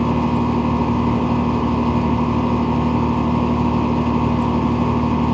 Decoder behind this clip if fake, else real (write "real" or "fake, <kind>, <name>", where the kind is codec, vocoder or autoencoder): real